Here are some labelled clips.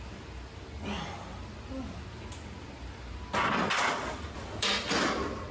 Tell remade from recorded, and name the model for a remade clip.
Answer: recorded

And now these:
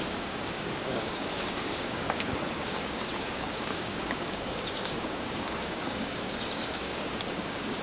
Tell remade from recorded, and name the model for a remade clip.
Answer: remade, codec, DAC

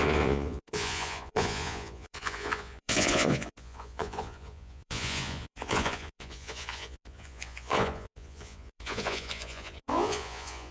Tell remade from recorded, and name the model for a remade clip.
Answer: remade, vocoder, Vocos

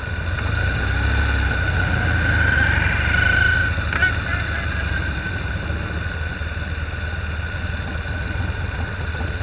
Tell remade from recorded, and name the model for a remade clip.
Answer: recorded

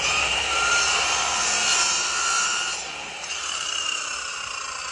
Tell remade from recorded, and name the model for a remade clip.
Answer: remade, vocoder, BigVGAN v2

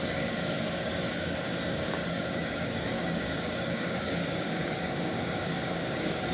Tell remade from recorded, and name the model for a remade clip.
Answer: remade, codec, DAC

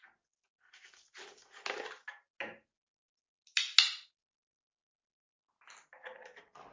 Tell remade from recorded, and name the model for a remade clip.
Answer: recorded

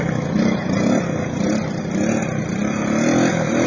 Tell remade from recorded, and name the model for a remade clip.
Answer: recorded